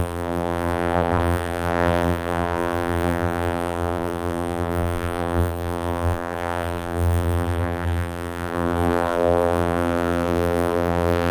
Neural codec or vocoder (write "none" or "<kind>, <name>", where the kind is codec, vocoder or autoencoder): vocoder, BigVGAN v2